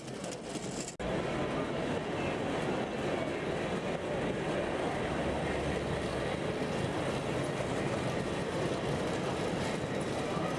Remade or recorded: recorded